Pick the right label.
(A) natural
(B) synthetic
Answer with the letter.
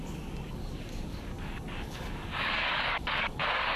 B